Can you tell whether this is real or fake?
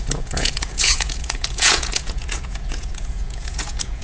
fake